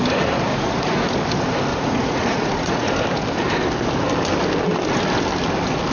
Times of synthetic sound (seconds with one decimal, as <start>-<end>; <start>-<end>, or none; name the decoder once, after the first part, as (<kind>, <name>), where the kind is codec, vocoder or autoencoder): 0.5-1.1 (vocoder, Vocos); 1.7-2.9